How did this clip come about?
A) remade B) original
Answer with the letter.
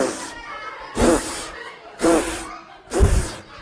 A